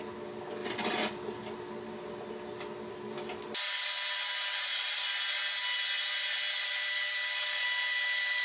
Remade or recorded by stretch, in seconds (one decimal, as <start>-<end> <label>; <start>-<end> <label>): 0.0-8.4 recorded